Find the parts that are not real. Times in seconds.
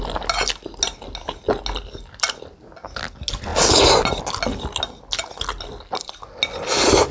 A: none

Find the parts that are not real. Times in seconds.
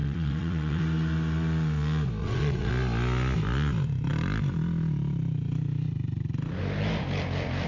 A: 0.0-0.8 (vocoder, WaveNeXt); 2.2-2.7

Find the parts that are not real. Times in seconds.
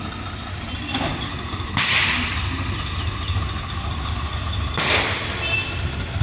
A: none